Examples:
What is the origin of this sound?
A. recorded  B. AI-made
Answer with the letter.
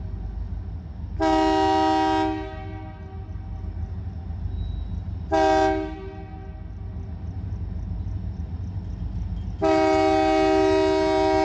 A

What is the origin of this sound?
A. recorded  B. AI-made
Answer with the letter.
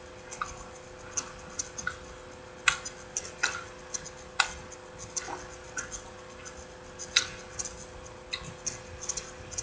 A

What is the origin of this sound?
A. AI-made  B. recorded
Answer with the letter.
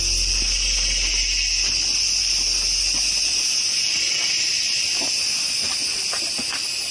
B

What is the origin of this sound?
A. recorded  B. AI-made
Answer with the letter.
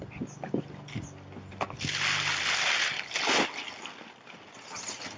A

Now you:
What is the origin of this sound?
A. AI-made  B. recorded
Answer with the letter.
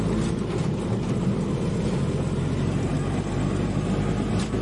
B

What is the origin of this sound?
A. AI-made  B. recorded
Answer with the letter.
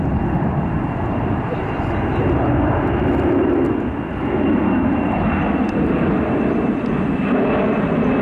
B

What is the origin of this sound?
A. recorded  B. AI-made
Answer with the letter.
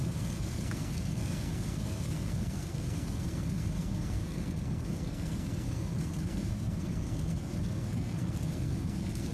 B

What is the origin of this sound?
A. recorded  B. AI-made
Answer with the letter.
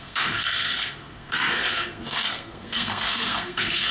B